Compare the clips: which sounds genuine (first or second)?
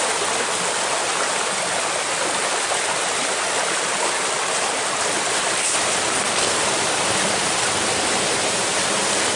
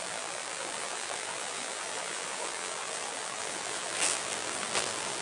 first